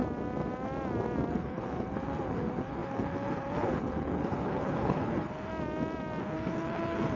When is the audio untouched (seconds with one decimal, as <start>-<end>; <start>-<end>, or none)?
0.0-1.3; 5.5-6.2